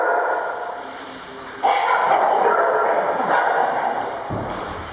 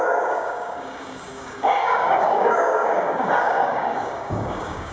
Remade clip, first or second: second